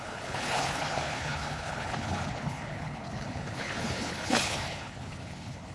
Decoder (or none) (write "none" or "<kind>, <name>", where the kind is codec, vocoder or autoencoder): codec, HILCodec